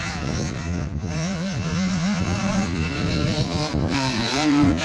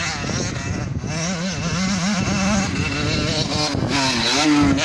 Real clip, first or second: second